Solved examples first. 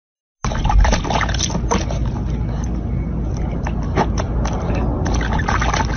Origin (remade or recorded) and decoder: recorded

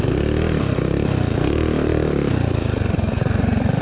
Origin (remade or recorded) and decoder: recorded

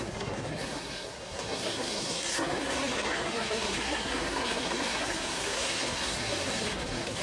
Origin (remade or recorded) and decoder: remade, codec, SNAC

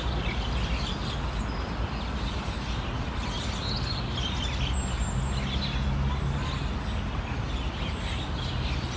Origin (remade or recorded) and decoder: recorded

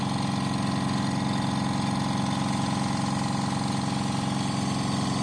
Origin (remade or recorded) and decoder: recorded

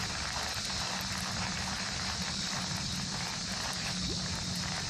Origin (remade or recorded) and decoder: recorded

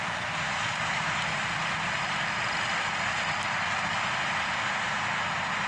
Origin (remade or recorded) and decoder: recorded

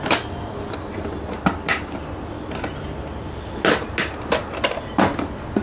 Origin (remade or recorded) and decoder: recorded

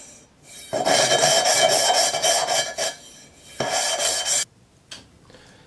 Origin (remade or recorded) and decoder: recorded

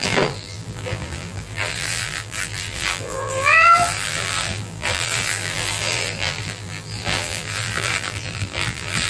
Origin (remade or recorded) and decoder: remade, vocoder, BigVGAN v2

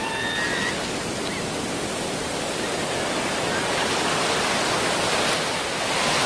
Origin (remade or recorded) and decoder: recorded